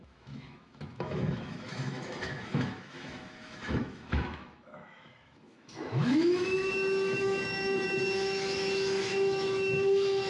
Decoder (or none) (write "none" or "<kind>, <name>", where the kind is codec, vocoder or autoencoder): autoencoder, DAC-VAE